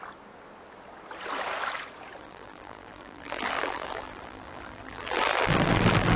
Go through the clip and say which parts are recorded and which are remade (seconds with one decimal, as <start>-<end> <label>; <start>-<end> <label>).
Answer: 0.0-2.2 recorded; 2.2-6.2 remade